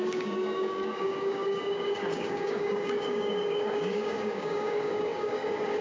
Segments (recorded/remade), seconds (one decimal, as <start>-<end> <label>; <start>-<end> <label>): 0.0-5.8 remade